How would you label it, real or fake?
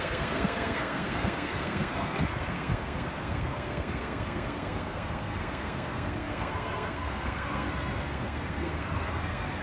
fake